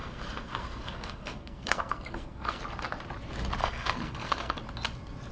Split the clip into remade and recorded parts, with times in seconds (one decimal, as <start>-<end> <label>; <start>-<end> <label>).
0.0-2.6 remade; 2.6-3.6 recorded; 3.6-4.6 remade; 4.6-5.3 recorded